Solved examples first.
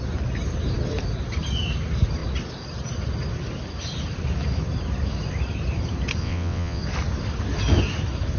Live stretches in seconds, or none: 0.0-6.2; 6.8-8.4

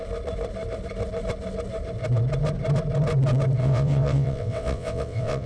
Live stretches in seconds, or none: 0.0-3.6

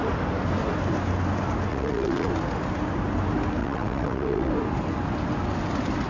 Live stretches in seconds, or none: 0.0-1.7; 2.3-3.6; 4.5-6.1

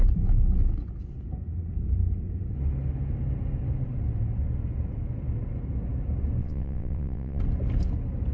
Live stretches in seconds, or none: 0.0-6.4; 7.4-8.3

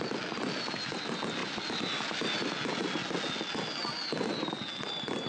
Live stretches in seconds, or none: 0.0-5.3

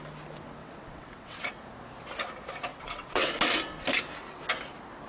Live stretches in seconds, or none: 0.0-0.6; 1.5-2.7; 3.3-5.1

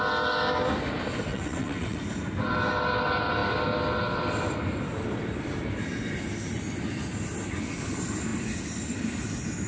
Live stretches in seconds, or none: 0.0-1.3; 2.0-9.7

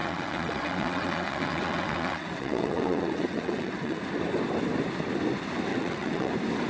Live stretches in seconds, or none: 4.0-5.7; 6.3-6.7